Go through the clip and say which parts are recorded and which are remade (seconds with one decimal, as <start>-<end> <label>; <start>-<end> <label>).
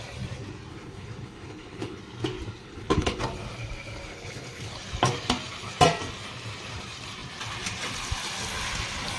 0.0-0.7 recorded; 0.7-2.0 remade; 2.0-2.6 recorded; 2.6-3.2 remade; 3.2-4.1 recorded; 4.1-4.7 remade; 4.7-9.2 recorded